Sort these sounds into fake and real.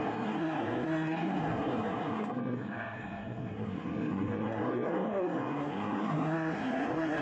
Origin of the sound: fake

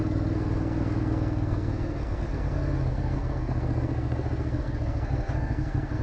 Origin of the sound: fake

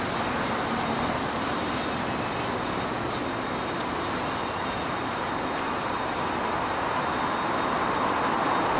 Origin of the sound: real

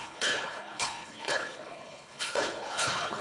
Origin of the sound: fake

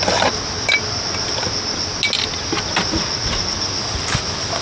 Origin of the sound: real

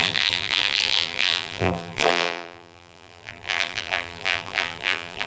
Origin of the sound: fake